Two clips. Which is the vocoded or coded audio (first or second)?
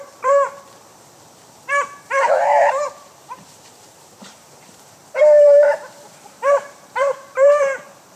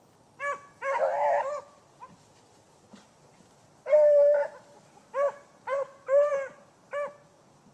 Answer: first